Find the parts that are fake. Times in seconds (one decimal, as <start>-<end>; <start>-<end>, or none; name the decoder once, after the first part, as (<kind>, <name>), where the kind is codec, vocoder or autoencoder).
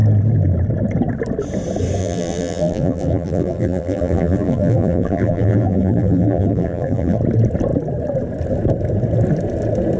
2.0-7.2 (vocoder, BigVGAN v2)